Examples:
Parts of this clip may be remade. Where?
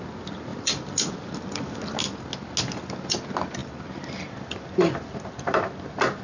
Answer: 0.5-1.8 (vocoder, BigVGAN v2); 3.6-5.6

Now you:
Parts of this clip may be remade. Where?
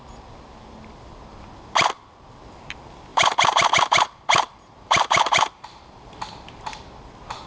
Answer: 3.1-6.8 (vocoder, BigVGAN v2)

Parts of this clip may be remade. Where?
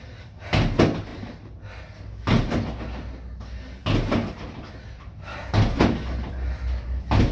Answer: 1.1-1.8 (vocoder, BigVGAN v2)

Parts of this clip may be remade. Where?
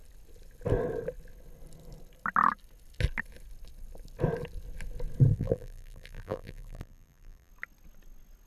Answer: 5.3-7.5 (vocoder, BigVGAN v2)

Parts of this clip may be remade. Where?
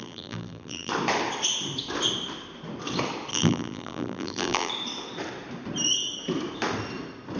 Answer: 0.0-0.9 (vocoder, BigVGAN v2); 3.3-4.7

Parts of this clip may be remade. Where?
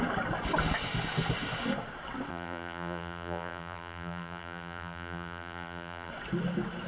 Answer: 2.3-6.1 (vocoder, BigVGAN v2)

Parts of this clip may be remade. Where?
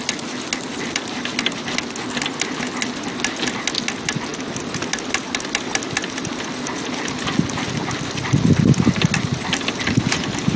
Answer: none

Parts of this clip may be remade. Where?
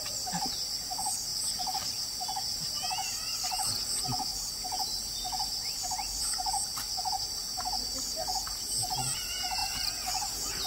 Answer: none